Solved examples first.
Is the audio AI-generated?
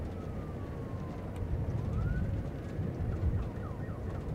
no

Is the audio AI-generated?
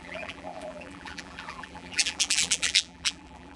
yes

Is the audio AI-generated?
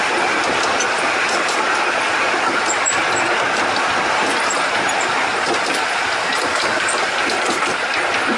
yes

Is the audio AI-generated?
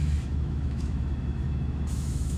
yes